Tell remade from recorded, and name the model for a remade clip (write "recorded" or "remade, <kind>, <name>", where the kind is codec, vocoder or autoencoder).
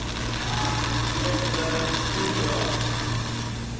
recorded